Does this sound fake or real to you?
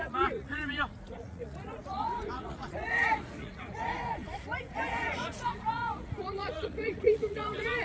fake